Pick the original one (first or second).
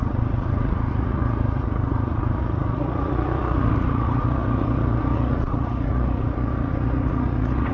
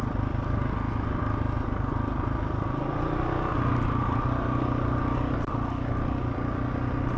second